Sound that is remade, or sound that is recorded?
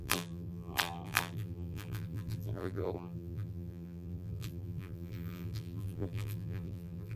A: remade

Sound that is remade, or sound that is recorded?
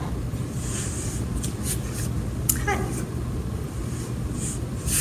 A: recorded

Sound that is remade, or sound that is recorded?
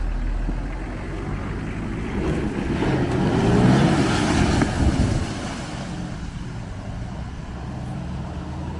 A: recorded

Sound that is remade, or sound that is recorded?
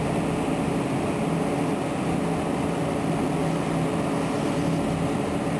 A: recorded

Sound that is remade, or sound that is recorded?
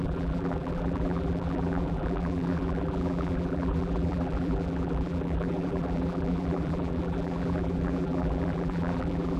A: remade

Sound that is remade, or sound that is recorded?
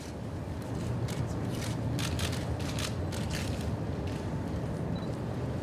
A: recorded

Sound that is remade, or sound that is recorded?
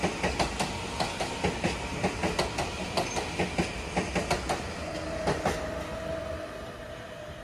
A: recorded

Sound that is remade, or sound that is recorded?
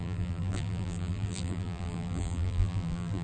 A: remade